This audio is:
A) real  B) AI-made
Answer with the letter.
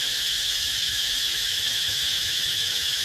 B